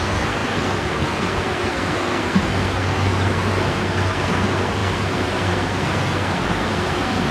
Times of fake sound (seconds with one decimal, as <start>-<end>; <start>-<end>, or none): 0.0-7.3